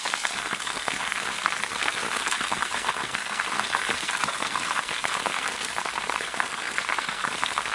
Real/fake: fake